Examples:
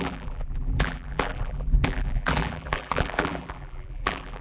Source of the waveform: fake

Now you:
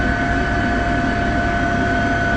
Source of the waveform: real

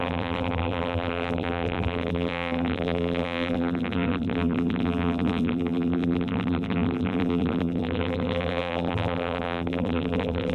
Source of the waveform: fake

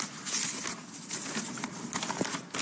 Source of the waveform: real